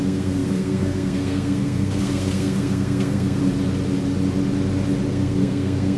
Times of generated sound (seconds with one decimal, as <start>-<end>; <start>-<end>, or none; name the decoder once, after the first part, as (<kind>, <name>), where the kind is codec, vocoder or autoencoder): 0.0-3.4 (codec, SNAC); 5.1-6.0